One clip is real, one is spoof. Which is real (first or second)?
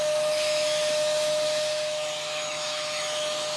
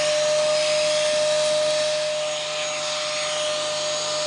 second